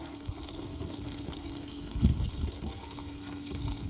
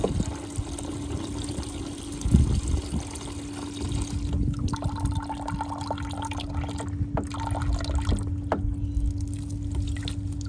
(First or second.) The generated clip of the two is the first